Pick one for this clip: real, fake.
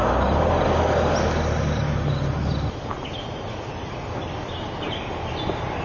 real